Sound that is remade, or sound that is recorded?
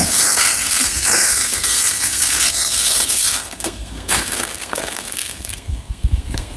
remade